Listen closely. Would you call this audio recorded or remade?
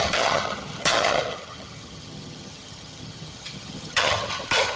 remade